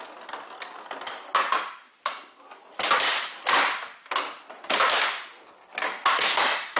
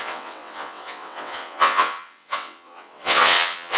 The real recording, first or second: first